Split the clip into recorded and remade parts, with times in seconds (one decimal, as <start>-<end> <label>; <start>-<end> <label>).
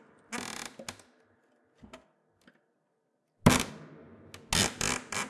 0.0-5.3 recorded